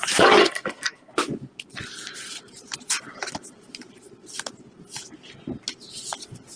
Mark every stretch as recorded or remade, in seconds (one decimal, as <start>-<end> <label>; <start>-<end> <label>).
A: 0.0-0.4 recorded; 0.4-1.1 remade; 1.1-6.6 recorded